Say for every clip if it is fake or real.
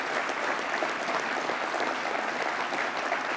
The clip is real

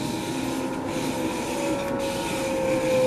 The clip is real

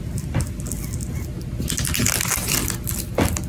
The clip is real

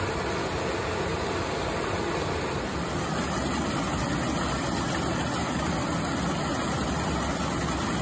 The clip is real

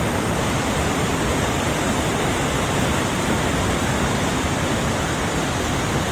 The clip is real